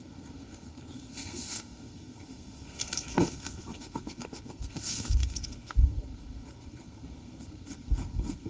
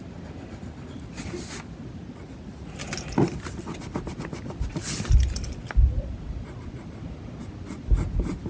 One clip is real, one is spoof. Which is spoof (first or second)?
first